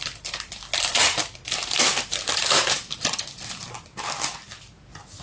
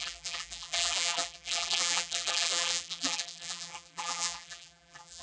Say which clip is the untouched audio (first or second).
first